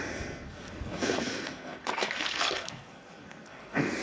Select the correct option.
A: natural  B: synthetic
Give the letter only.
B